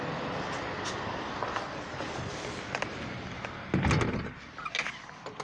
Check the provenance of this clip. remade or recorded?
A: recorded